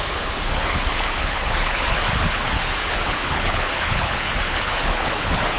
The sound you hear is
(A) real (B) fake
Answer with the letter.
B